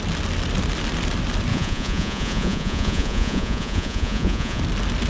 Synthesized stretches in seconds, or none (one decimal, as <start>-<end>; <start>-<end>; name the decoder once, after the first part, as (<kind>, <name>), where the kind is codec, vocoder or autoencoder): 1.5-4.6 (vocoder, Vocos)